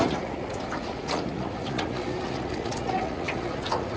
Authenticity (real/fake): fake